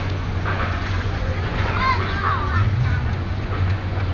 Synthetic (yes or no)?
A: yes